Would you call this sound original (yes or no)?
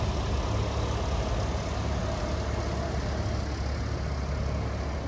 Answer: yes